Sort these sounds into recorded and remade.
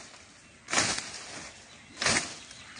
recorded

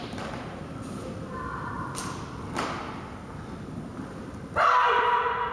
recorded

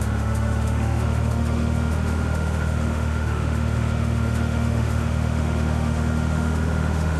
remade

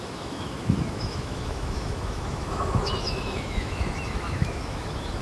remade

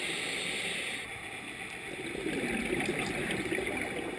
recorded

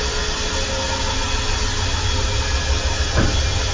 recorded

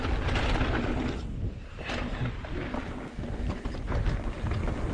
recorded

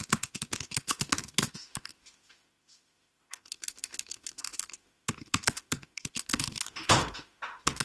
remade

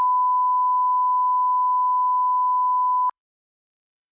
remade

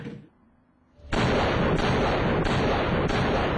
recorded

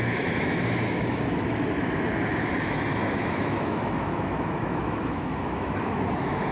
remade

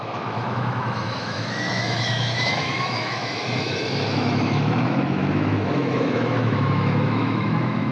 remade